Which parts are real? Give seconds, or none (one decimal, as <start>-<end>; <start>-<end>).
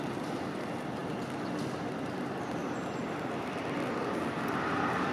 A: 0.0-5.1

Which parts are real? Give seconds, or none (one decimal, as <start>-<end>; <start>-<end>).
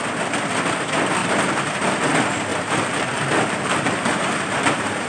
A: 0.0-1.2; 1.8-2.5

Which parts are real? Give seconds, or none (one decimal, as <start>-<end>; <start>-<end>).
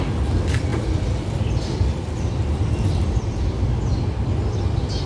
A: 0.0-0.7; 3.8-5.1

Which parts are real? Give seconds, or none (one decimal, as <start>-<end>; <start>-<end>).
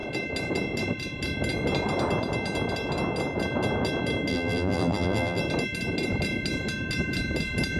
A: 0.0-4.3; 5.4-7.8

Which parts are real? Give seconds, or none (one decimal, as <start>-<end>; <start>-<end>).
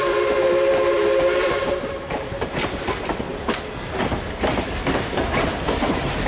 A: 3.3-5.0